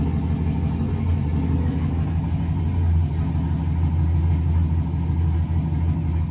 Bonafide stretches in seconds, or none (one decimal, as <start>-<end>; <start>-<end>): 0.0-6.3